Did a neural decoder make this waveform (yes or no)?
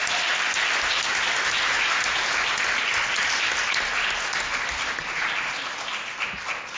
no